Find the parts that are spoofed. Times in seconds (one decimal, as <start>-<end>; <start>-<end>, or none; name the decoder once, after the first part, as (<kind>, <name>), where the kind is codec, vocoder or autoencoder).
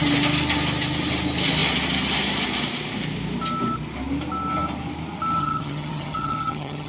5.4-6.9 (vocoder, HiFi-GAN)